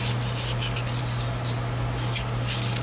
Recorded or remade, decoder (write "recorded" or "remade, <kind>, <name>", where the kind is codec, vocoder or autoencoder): recorded